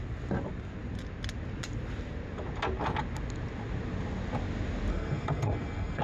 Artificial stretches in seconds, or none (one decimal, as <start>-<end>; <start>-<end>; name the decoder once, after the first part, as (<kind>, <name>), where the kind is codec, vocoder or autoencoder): 4.9-6.0 (codec, SNAC)